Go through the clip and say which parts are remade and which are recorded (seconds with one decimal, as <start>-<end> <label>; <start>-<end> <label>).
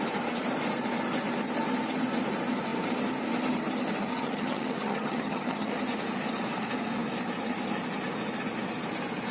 0.0-4.1 recorded; 4.1-5.7 remade; 5.7-9.3 recorded